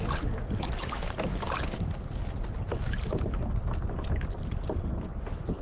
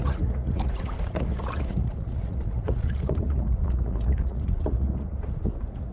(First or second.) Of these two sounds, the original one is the first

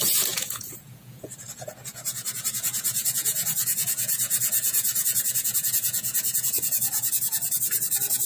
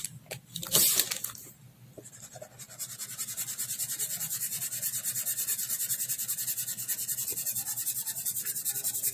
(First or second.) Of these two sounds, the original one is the second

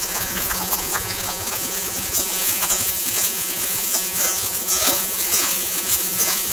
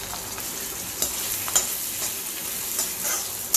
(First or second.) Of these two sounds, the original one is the second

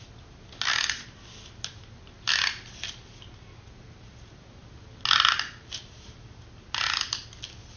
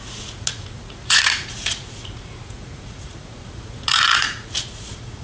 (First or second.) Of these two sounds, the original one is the first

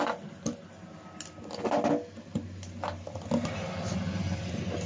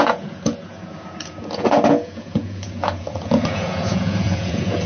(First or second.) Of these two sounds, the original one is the first